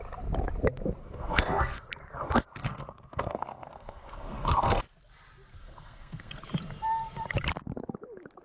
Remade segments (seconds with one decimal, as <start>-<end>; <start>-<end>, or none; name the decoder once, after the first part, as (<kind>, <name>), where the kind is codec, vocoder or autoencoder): 1.0-1.9 (codec, SNAC); 2.6-4.8; 5.6-6.4